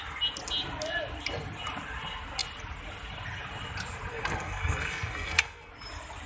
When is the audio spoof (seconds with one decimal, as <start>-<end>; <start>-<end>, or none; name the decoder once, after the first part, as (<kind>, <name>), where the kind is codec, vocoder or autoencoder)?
4.1-5.7 (codec, SNAC)